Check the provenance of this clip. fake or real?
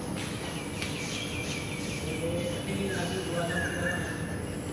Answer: real